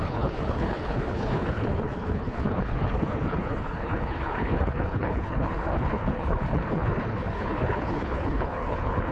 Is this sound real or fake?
fake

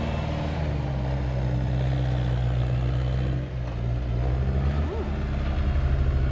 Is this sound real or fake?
real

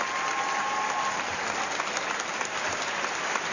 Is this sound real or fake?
real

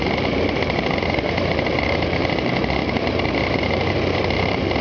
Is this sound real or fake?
fake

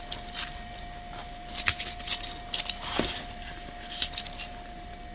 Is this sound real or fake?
real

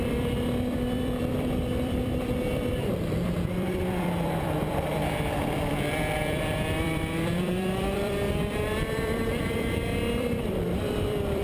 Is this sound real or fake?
fake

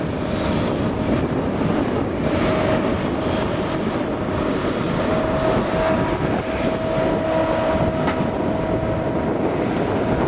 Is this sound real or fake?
real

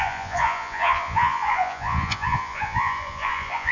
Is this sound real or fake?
fake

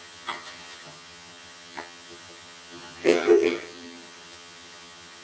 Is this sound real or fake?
fake